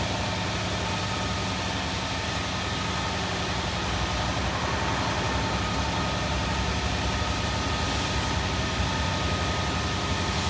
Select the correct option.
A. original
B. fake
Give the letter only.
A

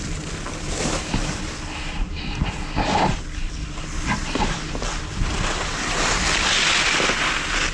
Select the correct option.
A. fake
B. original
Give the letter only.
B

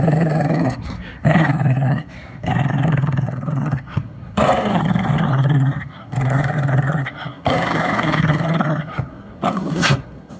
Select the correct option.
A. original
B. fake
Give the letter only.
B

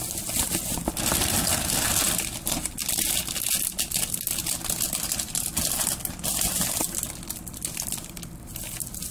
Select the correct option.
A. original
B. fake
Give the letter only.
A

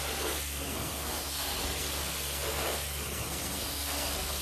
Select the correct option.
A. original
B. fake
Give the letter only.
B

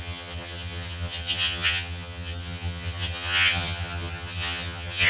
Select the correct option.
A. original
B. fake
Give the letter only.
B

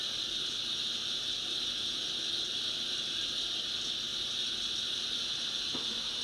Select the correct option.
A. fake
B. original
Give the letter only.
B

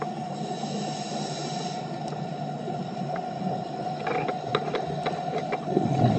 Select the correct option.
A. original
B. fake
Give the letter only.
A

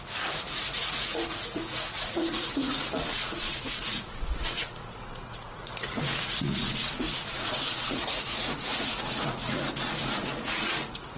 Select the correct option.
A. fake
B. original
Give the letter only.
A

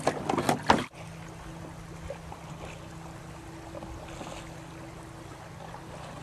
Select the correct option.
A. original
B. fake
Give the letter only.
A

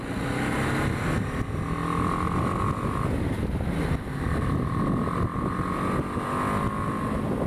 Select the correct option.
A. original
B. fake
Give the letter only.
A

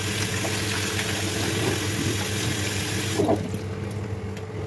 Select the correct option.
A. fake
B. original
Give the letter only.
B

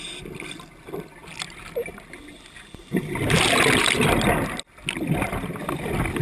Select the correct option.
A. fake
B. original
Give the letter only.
B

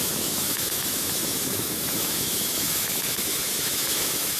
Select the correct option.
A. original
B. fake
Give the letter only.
B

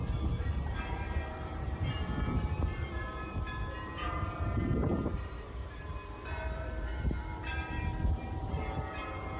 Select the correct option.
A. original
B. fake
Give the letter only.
B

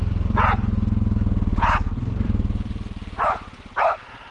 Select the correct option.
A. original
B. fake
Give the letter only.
B